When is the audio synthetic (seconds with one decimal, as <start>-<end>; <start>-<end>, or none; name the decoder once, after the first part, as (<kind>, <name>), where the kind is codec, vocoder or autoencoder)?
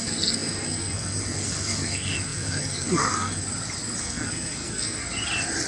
0.0-3.4 (codec, SNAC); 4.0-5.0